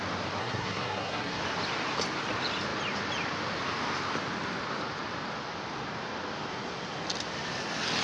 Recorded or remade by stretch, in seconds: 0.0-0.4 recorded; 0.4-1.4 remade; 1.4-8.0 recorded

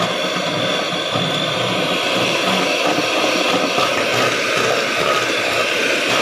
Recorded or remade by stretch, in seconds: 0.0-6.2 recorded

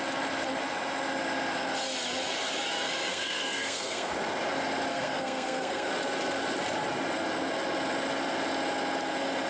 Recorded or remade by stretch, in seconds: 0.0-3.1 recorded; 3.1-4.1 remade; 4.1-4.9 recorded; 4.9-5.9 remade; 5.9-9.5 recorded

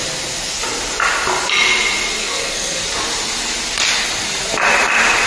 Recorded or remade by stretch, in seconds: 0.0-2.2 recorded; 2.2-2.8 remade; 2.8-5.3 recorded

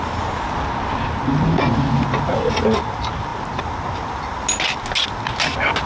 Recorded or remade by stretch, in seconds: 0.0-5.9 recorded

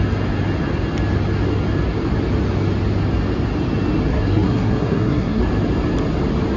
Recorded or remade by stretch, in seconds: 0.0-4.1 recorded; 4.1-5.4 remade; 5.4-6.6 recorded